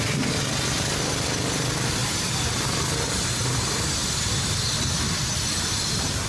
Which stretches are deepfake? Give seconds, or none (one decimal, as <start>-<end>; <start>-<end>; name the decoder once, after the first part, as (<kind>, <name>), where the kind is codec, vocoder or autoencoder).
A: 2.0-2.8 (vocoder, BigVGAN v2)